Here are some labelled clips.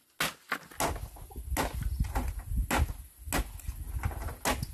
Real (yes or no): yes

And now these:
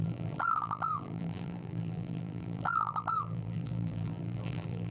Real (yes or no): no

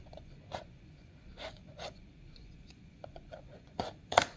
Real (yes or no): no